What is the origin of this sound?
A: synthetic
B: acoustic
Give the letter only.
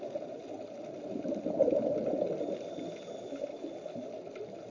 B